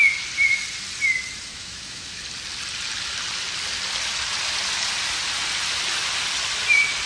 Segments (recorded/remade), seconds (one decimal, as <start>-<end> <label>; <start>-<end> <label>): 0.0-1.5 recorded; 1.5-2.2 remade; 2.2-7.1 recorded

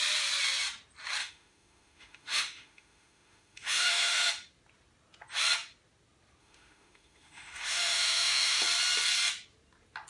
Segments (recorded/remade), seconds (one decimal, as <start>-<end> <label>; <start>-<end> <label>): 0.0-1.2 recorded; 1.2-4.3 remade; 4.3-6.4 recorded; 6.4-8.6 remade; 8.6-10.1 recorded

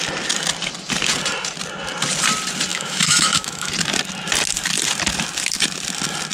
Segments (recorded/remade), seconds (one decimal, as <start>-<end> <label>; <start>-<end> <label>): 0.0-2.7 recorded; 2.7-3.7 remade; 3.7-6.3 recorded

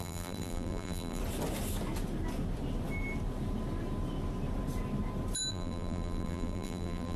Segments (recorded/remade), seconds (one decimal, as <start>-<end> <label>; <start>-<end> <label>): 0.0-1.2 remade; 1.2-5.5 recorded; 5.5-7.2 remade

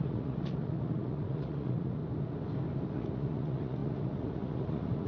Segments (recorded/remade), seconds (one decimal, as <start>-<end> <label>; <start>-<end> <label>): 0.0-2.0 remade; 2.0-2.9 recorded; 2.9-5.1 remade